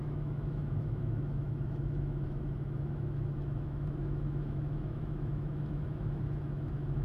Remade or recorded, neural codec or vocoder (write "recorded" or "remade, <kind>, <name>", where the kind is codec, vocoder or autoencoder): remade, autoencoder, DAC-VAE